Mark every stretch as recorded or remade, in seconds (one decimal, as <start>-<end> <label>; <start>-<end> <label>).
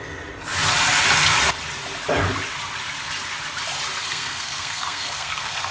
0.0-4.0 recorded; 4.0-5.7 remade